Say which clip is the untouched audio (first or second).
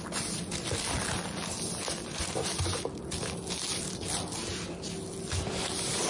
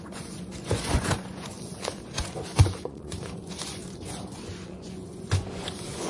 first